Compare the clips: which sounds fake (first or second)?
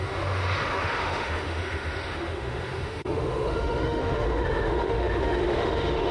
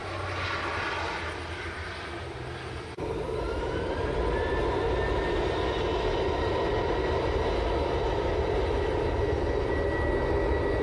first